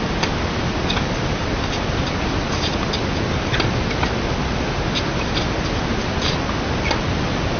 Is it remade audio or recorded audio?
recorded